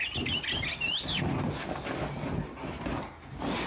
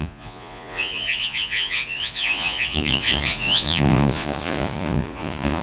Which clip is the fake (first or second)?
second